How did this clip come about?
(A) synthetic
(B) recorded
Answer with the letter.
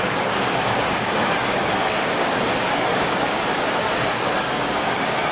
A